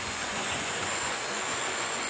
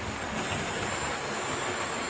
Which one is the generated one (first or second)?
first